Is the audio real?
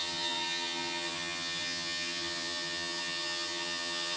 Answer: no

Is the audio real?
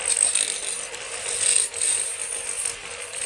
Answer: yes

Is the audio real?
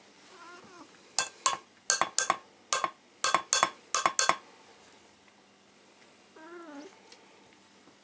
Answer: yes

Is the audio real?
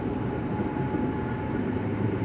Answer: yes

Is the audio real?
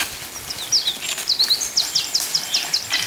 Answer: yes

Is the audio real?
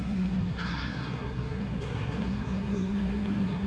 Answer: no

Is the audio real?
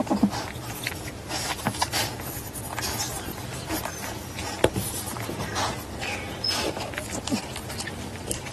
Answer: yes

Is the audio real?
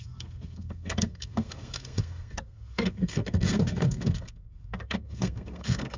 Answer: no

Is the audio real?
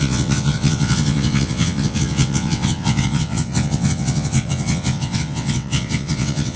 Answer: no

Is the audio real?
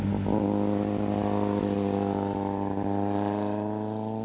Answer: yes